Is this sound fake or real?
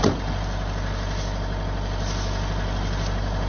real